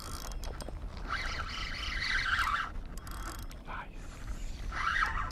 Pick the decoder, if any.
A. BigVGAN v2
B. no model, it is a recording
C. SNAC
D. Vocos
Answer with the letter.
A